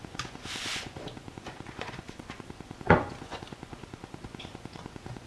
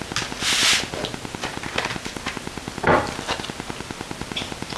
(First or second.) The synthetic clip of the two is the first